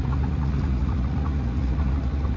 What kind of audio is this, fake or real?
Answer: fake